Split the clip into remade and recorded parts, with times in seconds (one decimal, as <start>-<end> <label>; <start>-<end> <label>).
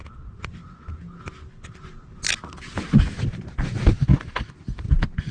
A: 0.0-5.3 recorded